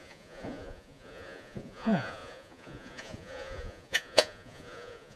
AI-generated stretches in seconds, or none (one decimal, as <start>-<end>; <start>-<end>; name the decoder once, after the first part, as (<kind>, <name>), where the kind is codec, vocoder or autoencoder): 0.0-5.2 (vocoder, Vocos)